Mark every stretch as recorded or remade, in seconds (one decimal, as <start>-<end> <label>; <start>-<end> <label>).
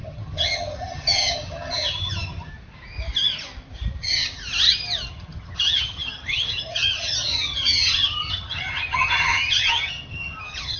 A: 0.0-2.5 remade; 2.5-4.0 recorded; 4.0-4.4 remade; 4.4-5.1 recorded; 5.1-10.8 remade